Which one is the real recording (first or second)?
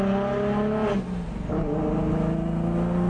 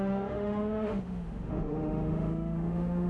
first